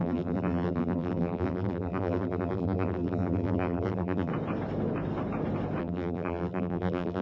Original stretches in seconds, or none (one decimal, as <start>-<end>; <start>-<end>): 4.3-5.8